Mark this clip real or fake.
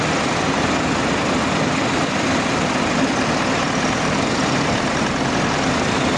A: real